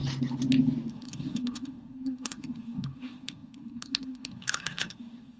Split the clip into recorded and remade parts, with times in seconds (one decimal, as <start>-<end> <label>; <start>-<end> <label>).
0.0-0.9 recorded; 0.9-5.4 remade